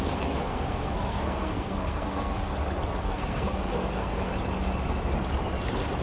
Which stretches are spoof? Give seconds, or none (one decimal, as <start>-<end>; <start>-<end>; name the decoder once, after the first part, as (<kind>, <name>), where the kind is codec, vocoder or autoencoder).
0.0-2.5 (codec, SNAC); 3.0-4.3